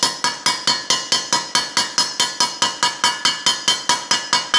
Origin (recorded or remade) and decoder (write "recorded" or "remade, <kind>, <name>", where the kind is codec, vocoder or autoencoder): recorded